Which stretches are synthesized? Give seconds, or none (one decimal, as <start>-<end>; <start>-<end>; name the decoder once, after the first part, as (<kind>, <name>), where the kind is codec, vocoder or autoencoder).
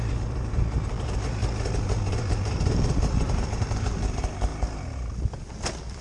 0.0-1.4 (vocoder, BigVGAN v2); 2.2-4.5